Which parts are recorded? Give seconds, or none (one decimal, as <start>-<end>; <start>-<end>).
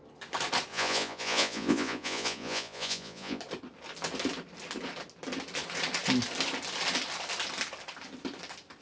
0.0-0.7; 3.4-8.8